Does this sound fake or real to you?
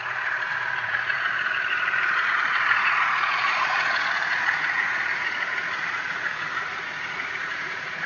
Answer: fake